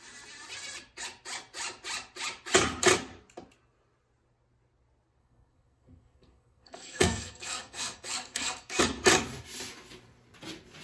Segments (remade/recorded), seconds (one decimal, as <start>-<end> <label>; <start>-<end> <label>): 0.0-5.2 recorded; 5.2-8.8 remade; 8.8-10.8 recorded